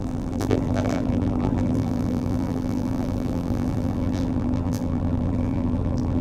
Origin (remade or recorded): remade